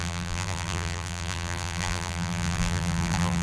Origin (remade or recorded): remade